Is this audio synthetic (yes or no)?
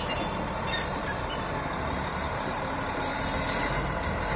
yes